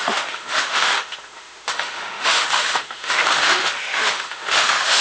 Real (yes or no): no